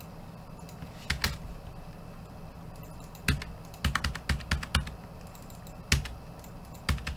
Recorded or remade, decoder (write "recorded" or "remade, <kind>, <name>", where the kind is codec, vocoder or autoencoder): recorded